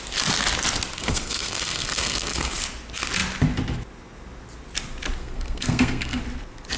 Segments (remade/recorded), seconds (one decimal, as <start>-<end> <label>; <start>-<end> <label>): 0.0-1.0 recorded; 1.0-2.6 remade; 2.6-5.2 recorded; 5.2-6.2 remade; 6.2-6.8 recorded